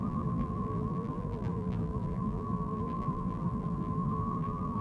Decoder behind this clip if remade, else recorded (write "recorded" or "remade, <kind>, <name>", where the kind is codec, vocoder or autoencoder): remade, vocoder, BigVGAN v2